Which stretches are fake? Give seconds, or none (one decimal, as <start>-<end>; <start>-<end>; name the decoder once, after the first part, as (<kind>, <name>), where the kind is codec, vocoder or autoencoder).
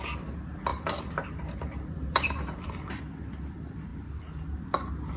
0.7-3.0 (vocoder, BigVGAN v2)